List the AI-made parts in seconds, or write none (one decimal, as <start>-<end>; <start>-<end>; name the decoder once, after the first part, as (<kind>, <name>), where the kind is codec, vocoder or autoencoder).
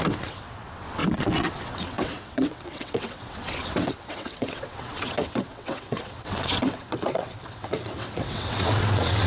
0.0-9.3 (vocoder, WaveNeXt)